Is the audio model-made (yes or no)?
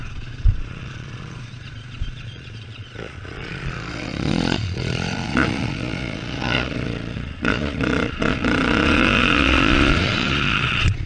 yes